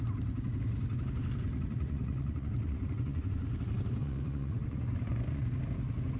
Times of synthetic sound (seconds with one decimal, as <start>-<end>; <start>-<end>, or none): 1.7-3.4; 4.0-5.5